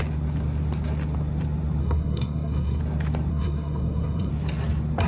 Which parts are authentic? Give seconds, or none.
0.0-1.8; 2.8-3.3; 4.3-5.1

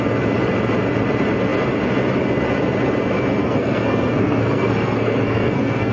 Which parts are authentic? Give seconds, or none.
0.0-3.4

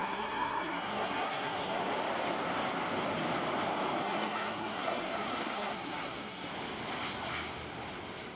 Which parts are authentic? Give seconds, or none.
1.8-4.0; 6.5-8.4

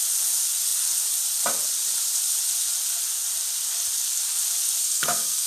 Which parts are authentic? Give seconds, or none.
0.0-4.8

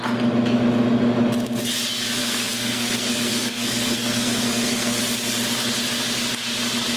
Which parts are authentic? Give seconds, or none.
0.0-2.2; 5.0-7.0

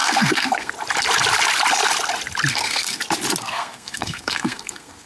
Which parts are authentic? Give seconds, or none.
0.7-2.5; 3.0-3.4

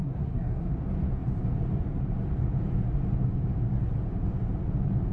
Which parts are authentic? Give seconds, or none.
0.7-5.1

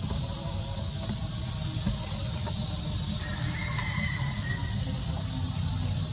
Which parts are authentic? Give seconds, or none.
0.0-6.1